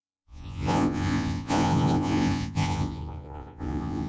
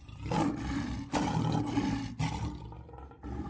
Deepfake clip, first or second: first